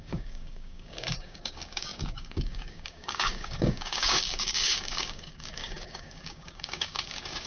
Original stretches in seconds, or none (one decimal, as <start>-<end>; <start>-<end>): none